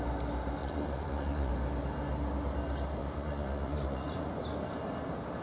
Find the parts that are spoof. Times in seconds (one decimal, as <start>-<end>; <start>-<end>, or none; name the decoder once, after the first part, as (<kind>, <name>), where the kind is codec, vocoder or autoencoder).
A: 0.6-1.5 (vocoder, Vocos); 3.0-4.4